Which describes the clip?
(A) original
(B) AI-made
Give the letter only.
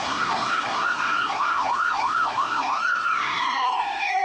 B